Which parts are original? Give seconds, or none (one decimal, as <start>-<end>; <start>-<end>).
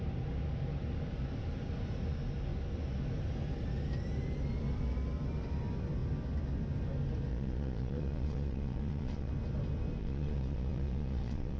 0.0-7.3; 9.3-10.0